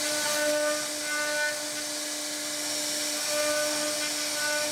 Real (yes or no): yes